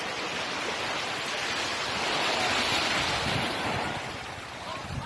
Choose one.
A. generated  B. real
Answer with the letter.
B